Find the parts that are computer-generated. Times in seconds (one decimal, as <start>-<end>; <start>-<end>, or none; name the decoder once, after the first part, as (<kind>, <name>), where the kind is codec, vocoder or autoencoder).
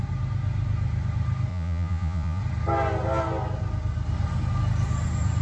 1.5-2.4 (vocoder, Vocos)